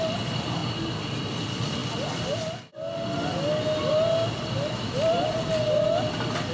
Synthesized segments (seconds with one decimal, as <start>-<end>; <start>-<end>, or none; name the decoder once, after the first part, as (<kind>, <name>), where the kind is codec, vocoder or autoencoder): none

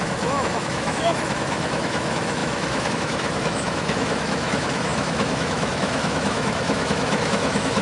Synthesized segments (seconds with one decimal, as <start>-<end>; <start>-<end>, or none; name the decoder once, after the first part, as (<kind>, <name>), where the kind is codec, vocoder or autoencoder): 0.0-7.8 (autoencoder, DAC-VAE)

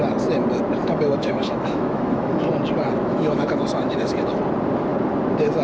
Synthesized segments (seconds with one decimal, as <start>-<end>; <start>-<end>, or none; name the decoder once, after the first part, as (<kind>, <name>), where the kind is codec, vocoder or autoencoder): 0.8-2.5 (autoencoder, DAC-VAE); 3.0-4.4

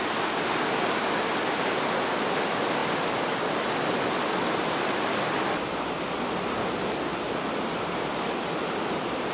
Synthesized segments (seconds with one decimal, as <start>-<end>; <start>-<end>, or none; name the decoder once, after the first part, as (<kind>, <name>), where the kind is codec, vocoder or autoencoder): none

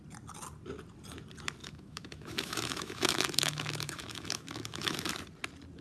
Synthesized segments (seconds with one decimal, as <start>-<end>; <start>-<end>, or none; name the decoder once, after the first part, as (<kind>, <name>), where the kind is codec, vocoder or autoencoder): 1.6-5.1 (autoencoder, DAC-VAE)

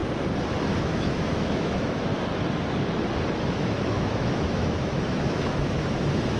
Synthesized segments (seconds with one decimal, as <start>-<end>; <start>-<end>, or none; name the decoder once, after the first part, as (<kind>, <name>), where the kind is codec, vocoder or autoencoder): 0.8-2.1 (autoencoder, DAC-VAE); 3.4-6.4

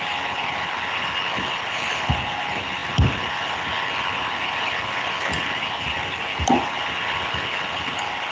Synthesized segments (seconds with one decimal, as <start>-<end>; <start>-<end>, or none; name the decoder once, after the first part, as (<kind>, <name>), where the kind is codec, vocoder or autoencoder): none